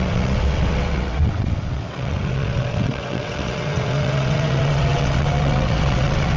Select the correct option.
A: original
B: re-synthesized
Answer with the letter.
B